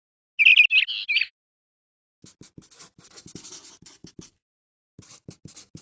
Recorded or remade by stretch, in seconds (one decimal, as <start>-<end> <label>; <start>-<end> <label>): 0.0-5.8 recorded

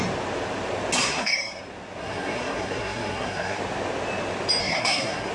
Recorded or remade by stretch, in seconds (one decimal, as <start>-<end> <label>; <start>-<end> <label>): 0.0-1.0 recorded; 1.0-1.6 remade; 1.6-2.0 recorded; 2.0-3.6 remade; 3.6-4.6 recorded; 4.6-5.3 remade

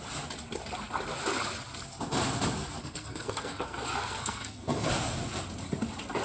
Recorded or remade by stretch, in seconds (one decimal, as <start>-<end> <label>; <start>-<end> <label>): 0.0-2.8 recorded; 2.8-4.9 remade; 4.9-6.2 recorded

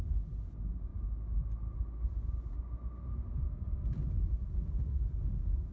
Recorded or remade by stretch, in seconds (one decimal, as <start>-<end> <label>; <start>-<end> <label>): 0.0-5.7 recorded